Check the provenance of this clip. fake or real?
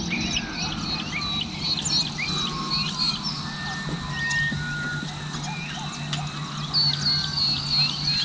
real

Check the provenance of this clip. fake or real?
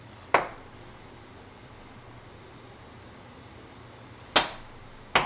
real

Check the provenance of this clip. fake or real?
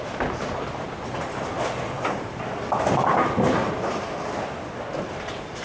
real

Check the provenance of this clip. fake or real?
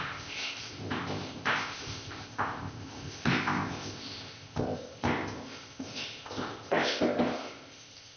fake